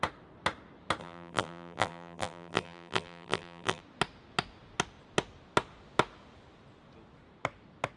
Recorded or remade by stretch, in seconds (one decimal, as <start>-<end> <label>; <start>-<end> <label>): 0.0-1.0 recorded; 1.0-3.8 remade; 3.8-8.0 recorded